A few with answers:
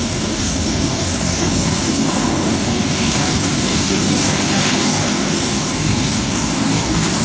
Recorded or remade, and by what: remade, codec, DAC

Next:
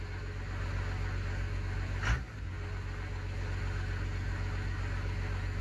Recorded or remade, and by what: recorded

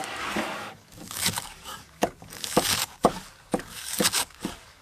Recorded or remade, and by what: remade, codec, DAC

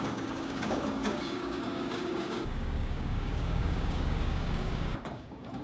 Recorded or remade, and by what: remade, codec, DAC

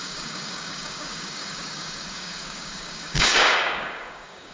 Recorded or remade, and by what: remade, codec, DAC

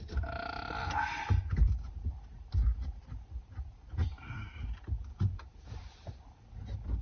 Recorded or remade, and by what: recorded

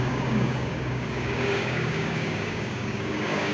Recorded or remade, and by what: remade, codec, DAC